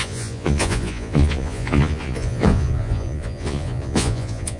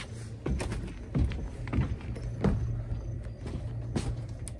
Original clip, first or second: second